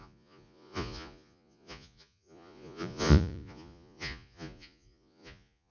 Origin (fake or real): fake